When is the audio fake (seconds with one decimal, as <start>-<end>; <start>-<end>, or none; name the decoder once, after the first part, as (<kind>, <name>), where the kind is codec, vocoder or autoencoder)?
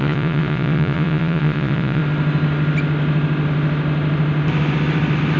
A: 0.0-2.0 (vocoder, Vocos)